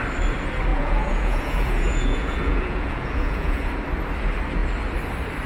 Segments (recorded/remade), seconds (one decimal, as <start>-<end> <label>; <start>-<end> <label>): 0.0-0.7 recorded; 0.7-3.7 remade; 3.7-5.5 recorded